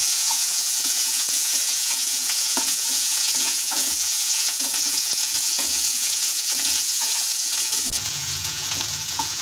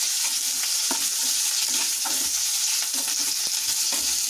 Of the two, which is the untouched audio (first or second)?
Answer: second